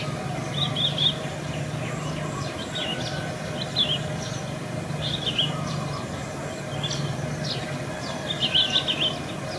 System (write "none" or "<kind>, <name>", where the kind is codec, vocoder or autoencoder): none